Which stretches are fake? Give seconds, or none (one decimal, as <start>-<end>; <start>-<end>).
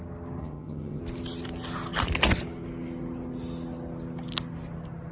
0.4-1.0